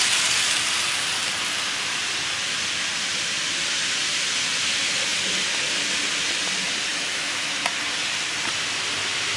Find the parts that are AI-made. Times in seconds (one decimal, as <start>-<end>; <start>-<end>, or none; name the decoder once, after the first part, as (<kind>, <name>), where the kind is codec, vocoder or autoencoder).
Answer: 6.9-7.5 (autoencoder, DAC-VAE)

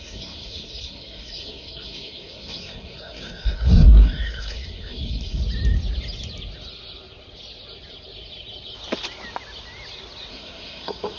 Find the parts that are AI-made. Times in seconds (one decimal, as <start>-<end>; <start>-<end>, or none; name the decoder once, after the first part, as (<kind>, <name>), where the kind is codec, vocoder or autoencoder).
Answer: 0.0-5.4 (codec, SNAC); 10.3-11.2